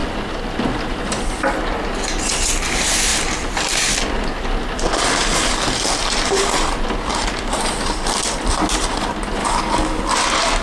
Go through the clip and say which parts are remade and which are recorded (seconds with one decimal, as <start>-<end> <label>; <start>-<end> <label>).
0.0-9.4 recorded; 9.4-10.0 remade; 10.0-10.6 recorded